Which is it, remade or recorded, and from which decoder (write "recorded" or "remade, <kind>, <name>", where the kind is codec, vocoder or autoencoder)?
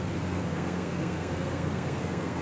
remade, codec, SNAC